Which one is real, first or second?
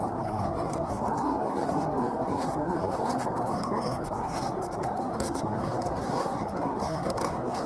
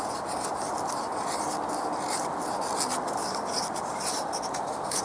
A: second